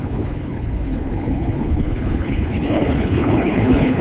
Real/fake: fake